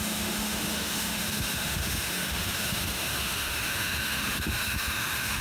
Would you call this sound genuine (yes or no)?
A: no